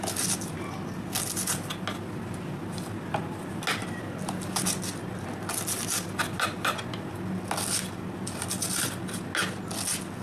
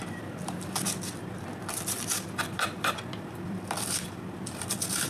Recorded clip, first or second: first